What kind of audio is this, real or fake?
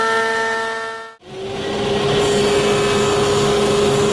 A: real